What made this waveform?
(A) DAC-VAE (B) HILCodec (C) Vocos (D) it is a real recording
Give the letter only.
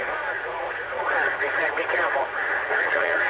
C